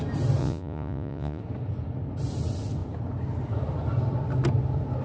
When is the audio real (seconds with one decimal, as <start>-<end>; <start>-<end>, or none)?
0.0-0.4; 1.4-5.0